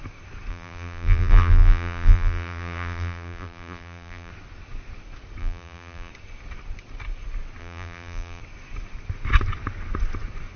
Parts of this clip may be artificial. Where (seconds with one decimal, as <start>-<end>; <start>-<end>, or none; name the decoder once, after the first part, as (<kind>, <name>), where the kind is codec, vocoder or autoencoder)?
0.5-4.3 (vocoder, BigVGAN v2); 5.4-6.1; 7.6-8.4